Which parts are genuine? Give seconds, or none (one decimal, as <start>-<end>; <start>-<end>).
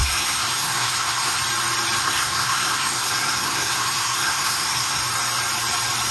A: 1.4-2.0; 5.0-6.1